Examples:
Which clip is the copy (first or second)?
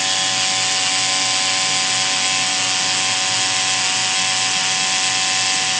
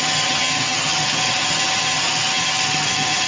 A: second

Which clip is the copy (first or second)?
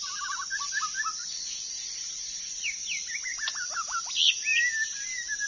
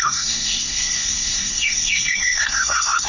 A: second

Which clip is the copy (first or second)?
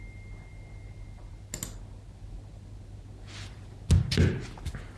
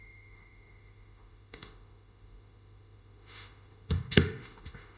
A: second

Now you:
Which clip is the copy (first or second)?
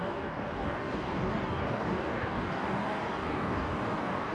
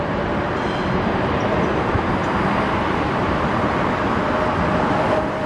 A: first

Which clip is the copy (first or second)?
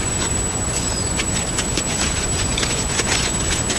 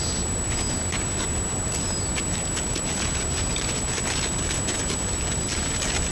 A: first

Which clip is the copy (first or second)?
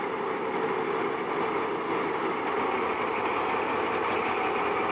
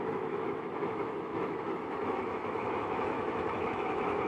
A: second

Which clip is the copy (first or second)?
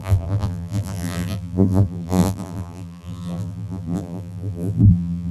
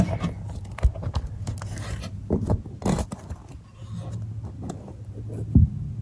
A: first